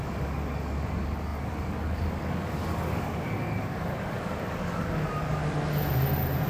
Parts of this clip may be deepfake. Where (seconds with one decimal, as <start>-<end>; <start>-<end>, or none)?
0.0-5.4